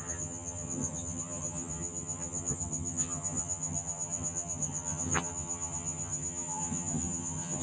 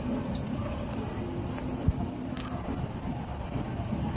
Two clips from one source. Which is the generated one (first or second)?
first